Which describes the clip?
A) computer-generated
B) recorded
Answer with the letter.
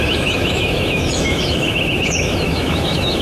A